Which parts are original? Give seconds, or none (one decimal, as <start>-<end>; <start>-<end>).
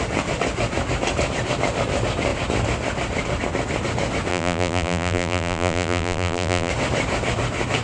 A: 0.0-4.3; 6.7-7.8